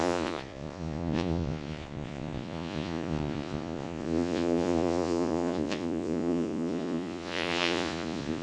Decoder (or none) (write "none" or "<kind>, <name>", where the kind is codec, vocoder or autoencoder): vocoder, Vocos